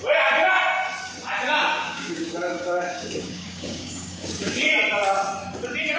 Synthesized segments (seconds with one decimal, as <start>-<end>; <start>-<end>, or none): 1.7-4.7